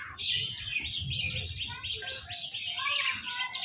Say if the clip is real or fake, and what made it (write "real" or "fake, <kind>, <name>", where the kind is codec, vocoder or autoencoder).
real